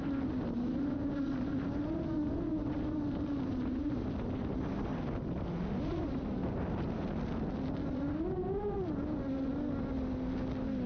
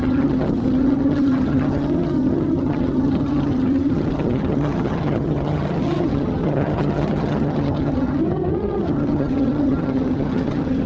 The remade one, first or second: second